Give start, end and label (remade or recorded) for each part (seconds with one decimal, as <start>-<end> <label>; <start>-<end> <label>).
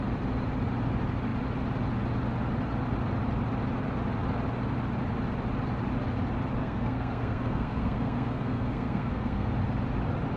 0.0-6.6 recorded; 6.6-9.5 remade; 9.5-10.4 recorded